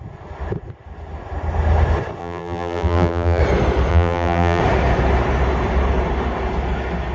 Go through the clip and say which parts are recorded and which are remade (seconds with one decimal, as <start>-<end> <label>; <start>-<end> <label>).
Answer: 0.0-2.2 recorded; 2.2-3.4 remade; 3.4-3.9 recorded; 3.9-4.6 remade; 4.6-7.1 recorded